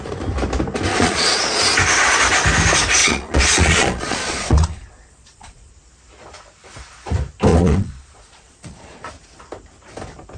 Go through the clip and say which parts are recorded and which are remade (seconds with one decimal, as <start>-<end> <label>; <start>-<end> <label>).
0.0-0.9 recorded; 0.9-1.6 remade; 1.6-3.0 recorded; 3.0-5.7 remade; 5.7-7.5 recorded; 7.5-9.1 remade; 9.1-10.4 recorded